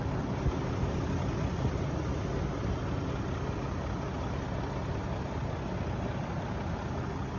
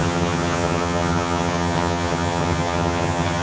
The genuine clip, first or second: first